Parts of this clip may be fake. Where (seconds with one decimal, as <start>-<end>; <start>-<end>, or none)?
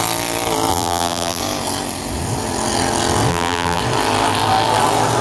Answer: 0.7-1.4; 3.3-3.8